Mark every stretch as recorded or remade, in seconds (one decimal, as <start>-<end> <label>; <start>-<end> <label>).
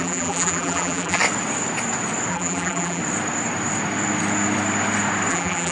0.0-1.2 remade; 1.2-2.3 recorded; 2.3-3.0 remade; 3.0-5.3 recorded; 5.3-5.7 remade